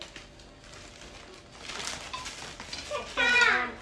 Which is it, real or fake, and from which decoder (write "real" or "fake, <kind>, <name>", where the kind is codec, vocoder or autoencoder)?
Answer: real